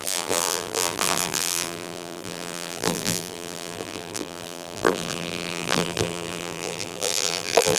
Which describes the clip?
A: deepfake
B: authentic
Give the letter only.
A